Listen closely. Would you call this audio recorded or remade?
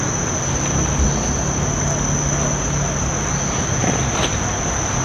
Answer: recorded